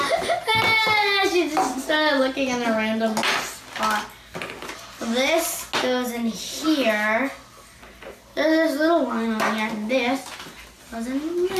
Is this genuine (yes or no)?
yes